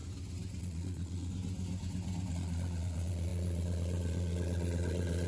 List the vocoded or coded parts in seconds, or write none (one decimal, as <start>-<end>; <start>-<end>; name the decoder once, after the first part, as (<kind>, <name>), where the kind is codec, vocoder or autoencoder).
0.6-1.3 (vocoder, Vocos); 2.3-5.3